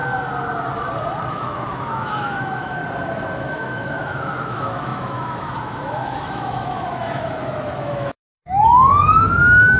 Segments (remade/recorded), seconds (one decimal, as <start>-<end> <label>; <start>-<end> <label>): 0.0-1.3 recorded; 1.3-2.8 remade; 2.8-3.4 recorded; 3.4-9.8 remade